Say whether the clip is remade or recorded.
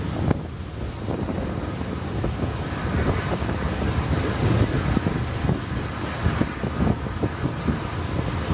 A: recorded